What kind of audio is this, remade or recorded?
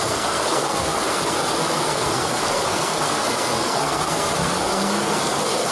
remade